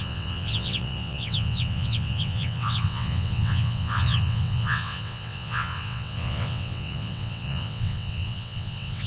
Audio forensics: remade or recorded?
remade